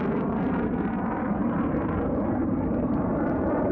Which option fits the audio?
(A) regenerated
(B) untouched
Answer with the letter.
A